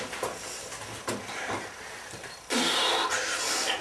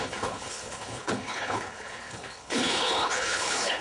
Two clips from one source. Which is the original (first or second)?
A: first